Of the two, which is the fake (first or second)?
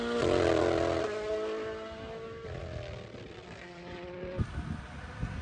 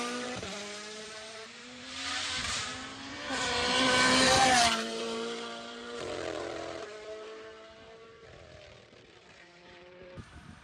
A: second